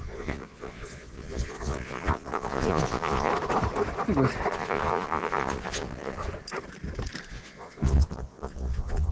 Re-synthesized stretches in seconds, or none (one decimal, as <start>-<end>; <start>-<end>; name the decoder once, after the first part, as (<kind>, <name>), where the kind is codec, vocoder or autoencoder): 0.0-3.3 (vocoder, Vocos); 4.5-6.2; 7.3-9.1